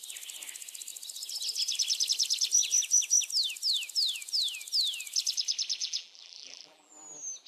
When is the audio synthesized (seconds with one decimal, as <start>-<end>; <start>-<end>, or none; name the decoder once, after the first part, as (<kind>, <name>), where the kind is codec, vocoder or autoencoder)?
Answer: 5.8-6.9 (vocoder, BigVGAN v2)

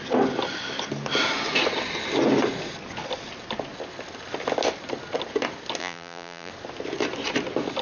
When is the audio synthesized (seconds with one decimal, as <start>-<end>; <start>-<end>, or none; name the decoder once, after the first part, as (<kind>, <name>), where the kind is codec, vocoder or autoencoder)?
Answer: 5.8-6.5 (vocoder, BigVGAN v2)